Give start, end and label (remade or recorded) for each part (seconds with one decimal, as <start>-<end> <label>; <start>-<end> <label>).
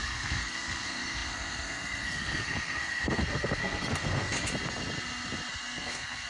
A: 0.0-4.5 remade; 4.5-5.5 recorded; 5.5-6.3 remade